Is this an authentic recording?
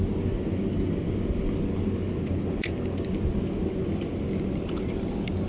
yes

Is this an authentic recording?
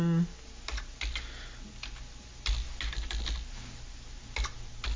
yes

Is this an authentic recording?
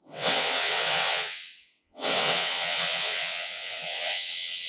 no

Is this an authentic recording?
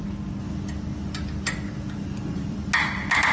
yes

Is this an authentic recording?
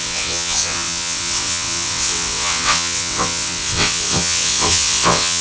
no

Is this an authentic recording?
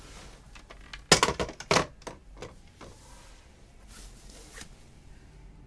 yes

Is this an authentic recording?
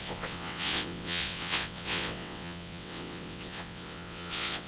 no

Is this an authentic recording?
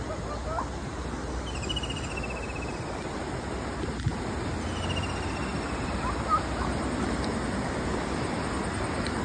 yes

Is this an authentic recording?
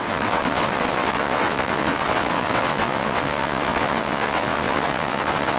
no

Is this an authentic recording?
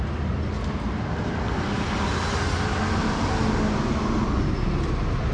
yes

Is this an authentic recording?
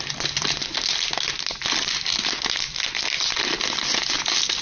yes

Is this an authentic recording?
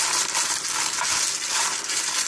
yes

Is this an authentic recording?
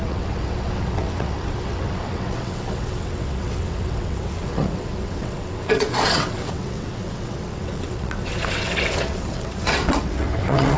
no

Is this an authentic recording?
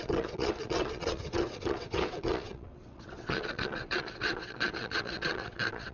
no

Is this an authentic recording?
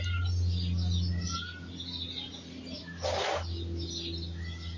yes